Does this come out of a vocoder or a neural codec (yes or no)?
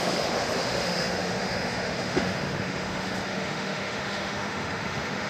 yes